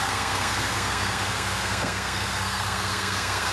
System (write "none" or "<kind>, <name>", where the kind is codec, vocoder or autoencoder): codec, SNAC